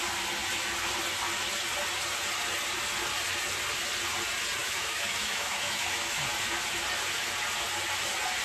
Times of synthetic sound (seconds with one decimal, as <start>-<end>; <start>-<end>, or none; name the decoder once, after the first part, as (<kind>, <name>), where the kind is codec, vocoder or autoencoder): 4.6-6.2 (autoencoder, DAC-VAE)

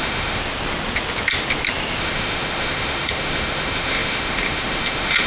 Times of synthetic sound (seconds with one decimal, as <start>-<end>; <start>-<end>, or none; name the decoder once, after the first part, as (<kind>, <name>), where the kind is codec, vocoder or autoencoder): 0.0-0.4 (autoencoder, DAC-VAE); 2.0-5.3

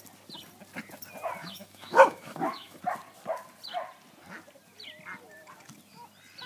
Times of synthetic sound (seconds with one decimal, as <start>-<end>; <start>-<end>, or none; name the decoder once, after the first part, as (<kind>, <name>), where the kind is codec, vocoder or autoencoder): 1.4-2.8 (autoencoder, DAC-VAE)

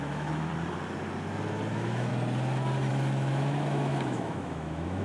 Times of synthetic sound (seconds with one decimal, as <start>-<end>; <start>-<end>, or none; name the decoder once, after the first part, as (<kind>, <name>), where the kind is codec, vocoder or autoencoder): 0.0-0.5 (autoencoder, DAC-VAE); 1.7-2.1; 2.9-5.0

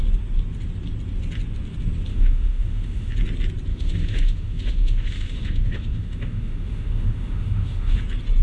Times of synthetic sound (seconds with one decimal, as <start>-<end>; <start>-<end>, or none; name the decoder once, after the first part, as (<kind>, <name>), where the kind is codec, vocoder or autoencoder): 2.1-3.1 (autoencoder, DAC-VAE); 3.7-8.0

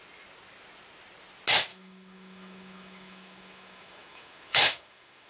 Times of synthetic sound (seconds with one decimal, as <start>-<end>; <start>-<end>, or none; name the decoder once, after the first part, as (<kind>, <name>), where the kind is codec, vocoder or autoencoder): 1.7-5.3 (autoencoder, DAC-VAE)

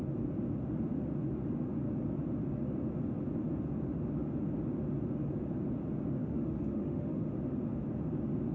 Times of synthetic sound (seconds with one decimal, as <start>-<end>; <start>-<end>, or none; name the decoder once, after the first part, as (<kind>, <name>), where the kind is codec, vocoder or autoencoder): 6.2-7.3 (autoencoder, DAC-VAE)

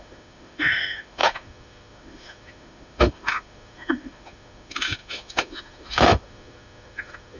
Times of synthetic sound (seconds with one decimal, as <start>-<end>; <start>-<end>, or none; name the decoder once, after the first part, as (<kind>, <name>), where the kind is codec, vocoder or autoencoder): 0.0-7.4 (autoencoder, DAC-VAE)